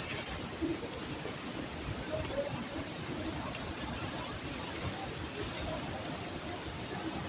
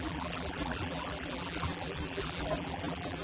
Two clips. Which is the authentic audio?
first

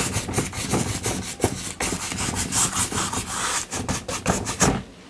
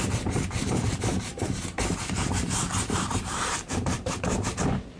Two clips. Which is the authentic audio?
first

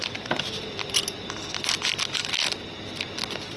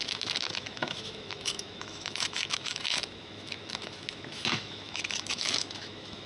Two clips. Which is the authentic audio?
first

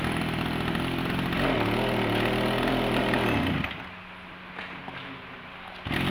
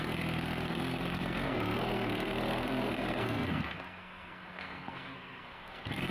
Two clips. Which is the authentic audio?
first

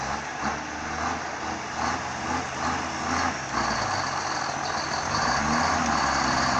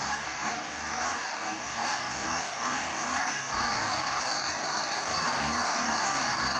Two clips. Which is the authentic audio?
first